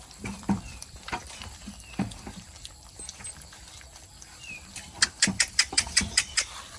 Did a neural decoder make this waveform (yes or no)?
yes